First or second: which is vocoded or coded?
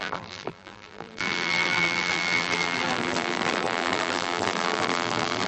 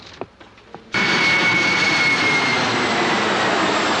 first